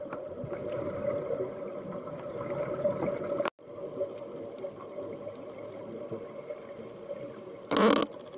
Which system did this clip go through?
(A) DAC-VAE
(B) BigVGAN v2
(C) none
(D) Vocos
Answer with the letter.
C